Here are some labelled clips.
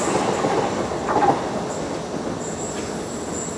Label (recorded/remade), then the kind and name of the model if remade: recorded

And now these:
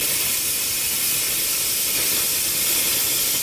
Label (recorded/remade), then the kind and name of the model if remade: recorded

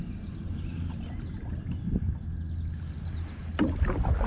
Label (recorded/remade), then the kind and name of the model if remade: recorded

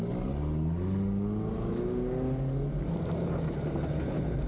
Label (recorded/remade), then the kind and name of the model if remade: recorded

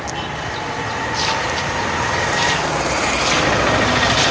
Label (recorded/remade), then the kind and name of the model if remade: recorded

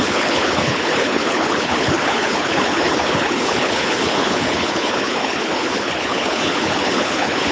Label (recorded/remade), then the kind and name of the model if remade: remade, codec, HILCodec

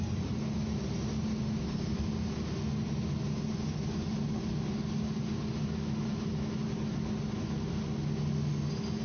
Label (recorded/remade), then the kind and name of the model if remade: recorded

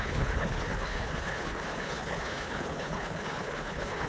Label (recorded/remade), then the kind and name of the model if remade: remade, codec, HILCodec